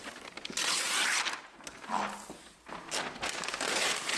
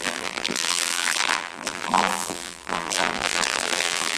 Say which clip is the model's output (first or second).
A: second